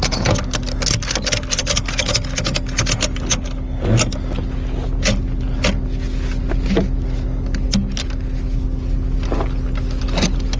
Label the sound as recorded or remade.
recorded